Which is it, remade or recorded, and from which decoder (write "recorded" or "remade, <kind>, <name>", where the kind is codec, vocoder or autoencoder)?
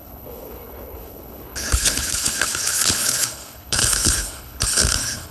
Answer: remade, codec, HILCodec